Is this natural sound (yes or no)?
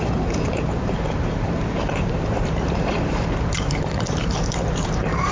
no